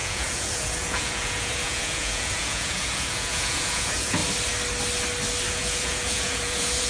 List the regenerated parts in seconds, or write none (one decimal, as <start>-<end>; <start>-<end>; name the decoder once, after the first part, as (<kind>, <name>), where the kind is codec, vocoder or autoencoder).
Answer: 0.0-4.2 (vocoder, Vocos); 5.5-6.9